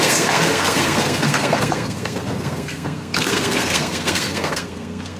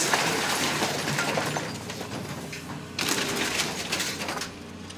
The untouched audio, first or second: second